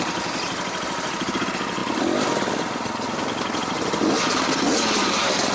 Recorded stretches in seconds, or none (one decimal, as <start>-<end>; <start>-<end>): 0.0-5.5

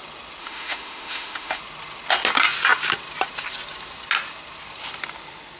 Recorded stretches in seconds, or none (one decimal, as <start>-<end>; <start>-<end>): 0.0-0.4; 1.6-5.6

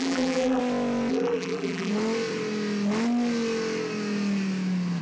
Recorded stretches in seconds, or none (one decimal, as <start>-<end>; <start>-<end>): 0.6-1.1; 1.9-5.0

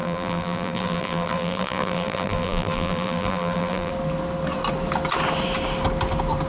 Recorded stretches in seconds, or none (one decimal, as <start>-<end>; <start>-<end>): 3.9-6.5

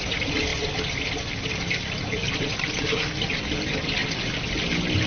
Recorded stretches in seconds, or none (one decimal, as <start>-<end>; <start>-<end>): 0.0-5.1

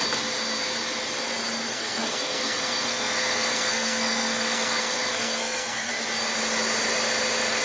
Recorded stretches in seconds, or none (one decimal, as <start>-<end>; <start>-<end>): 0.0-1.7; 5.9-7.6

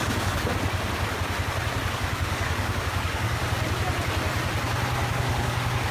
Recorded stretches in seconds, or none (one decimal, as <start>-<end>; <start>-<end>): 0.5-1.9; 3.4-5.1

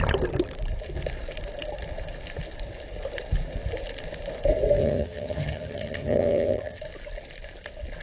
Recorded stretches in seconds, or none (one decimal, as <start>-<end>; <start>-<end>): 0.0-4.8; 6.8-8.0